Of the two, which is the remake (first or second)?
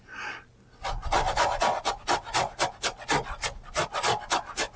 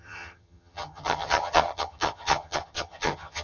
second